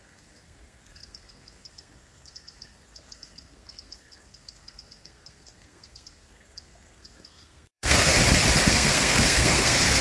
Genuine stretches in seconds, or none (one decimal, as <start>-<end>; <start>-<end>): 8.1-8.7